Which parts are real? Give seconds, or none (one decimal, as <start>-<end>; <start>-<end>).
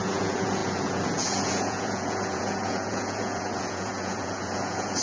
none